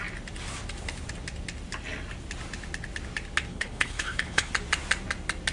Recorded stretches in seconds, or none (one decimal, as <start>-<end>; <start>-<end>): 0.0-3.5; 4.5-5.5